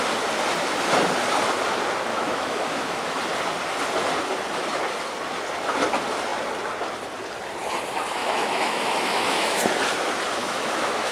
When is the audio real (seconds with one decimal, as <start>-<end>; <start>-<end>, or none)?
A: 0.0-2.1; 3.2-8.2; 9.6-10.4